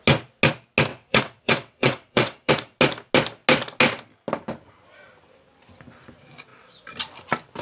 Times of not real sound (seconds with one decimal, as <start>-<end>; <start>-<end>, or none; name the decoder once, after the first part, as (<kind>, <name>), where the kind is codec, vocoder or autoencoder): 0.9-2.5 (vocoder, WaveNeXt)